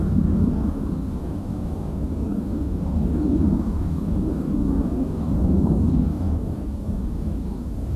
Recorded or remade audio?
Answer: remade